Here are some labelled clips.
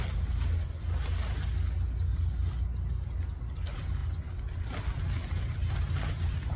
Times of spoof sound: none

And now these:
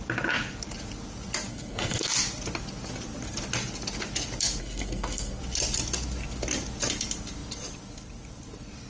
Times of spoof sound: 1.5-2.1 (codec, SNAC); 4.6-5.4

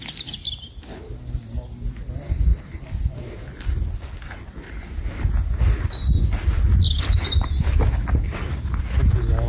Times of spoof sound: none